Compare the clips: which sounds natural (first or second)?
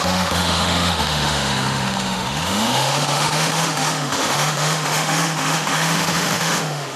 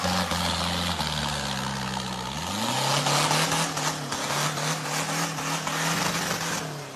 second